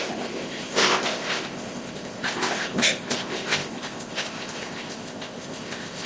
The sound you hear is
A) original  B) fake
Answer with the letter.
B